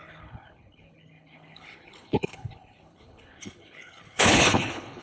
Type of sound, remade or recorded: remade